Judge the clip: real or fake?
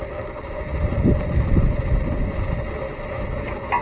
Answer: real